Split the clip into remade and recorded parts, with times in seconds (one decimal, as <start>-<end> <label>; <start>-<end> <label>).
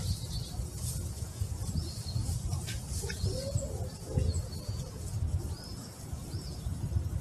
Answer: 0.0-0.7 recorded; 0.7-5.0 remade; 5.0-5.7 recorded; 5.7-6.6 remade; 6.6-7.2 recorded